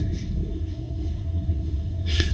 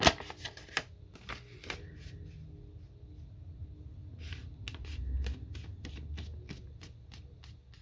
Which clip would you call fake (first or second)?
first